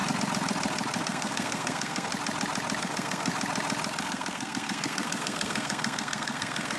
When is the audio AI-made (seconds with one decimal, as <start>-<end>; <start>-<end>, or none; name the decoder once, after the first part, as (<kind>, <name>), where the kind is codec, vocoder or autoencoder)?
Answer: 1.0-2.1 (codec, SNAC); 2.8-3.3; 4.0-6.8